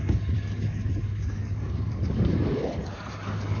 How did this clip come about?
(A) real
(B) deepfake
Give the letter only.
B